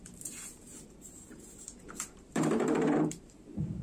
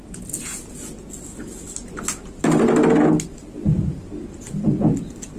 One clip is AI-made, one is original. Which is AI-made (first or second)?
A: first